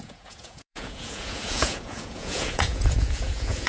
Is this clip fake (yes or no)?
yes